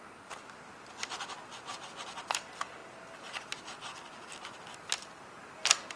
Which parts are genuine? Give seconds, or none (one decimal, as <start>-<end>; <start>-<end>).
0.0-6.0